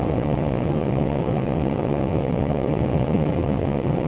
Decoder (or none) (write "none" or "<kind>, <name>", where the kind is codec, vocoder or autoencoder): vocoder, WaveNeXt